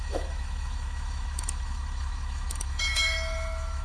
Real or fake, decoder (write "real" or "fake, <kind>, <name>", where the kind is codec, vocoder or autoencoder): fake, autoencoder, DAC-VAE